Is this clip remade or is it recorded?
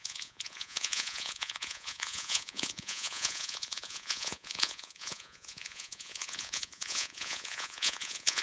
remade